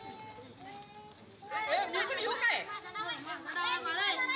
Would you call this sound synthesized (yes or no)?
no